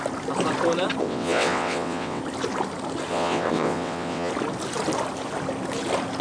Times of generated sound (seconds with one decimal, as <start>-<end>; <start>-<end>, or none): 1.0-2.2; 3.1-4.3